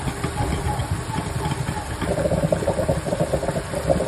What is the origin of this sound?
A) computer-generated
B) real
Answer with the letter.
B